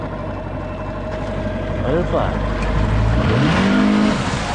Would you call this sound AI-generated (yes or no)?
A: no